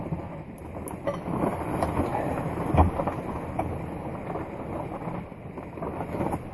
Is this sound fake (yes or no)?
no